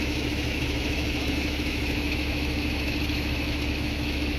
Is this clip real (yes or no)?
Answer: no